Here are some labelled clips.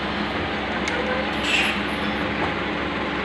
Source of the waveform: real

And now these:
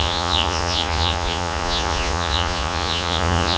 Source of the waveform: fake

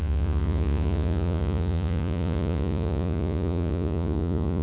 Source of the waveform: fake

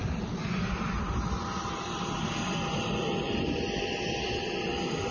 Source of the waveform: real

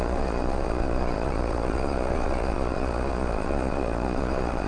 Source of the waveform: fake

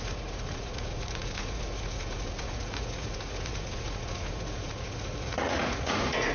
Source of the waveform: fake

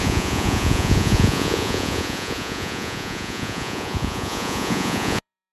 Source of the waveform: fake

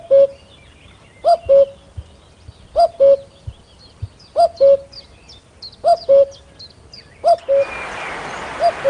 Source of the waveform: real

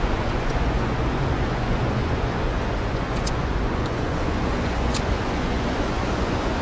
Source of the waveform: fake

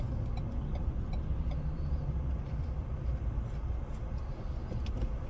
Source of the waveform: real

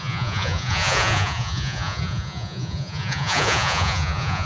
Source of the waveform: fake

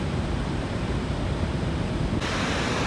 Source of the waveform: real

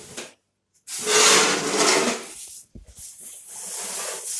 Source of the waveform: real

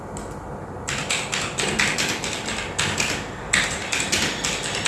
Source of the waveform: real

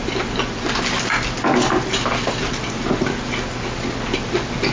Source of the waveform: real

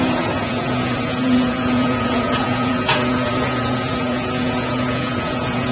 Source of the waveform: fake